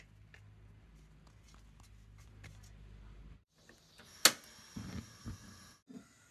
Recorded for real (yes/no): yes